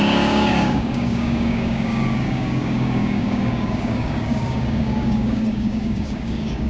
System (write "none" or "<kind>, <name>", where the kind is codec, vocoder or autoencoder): codec, DAC